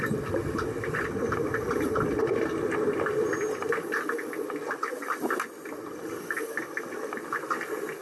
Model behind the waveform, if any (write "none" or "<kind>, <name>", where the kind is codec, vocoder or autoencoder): none